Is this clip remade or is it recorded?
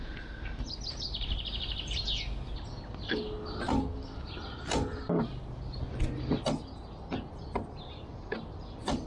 recorded